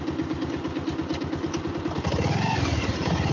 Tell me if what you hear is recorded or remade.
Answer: recorded